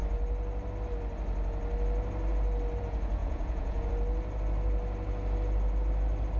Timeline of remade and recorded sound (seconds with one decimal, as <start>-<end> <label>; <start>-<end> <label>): 0.0-3.2 recorded; 3.2-3.9 remade; 3.9-6.4 recorded

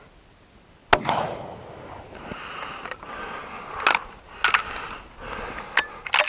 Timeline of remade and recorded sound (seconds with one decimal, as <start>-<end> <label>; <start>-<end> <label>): 0.0-6.3 recorded

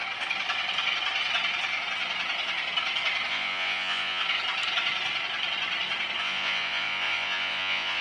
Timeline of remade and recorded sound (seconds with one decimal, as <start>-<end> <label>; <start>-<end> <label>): 0.0-3.3 recorded; 3.3-4.2 remade; 4.2-6.2 recorded; 6.2-8.0 remade

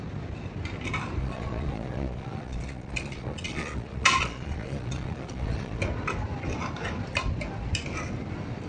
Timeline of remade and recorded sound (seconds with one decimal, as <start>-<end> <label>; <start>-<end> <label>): 0.0-1.2 recorded; 1.2-5.8 remade; 5.8-8.7 recorded

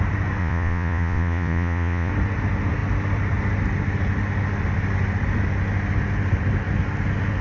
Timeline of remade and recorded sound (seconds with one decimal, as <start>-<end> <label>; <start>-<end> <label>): 0.0-0.4 recorded; 0.4-2.1 remade; 2.1-7.4 recorded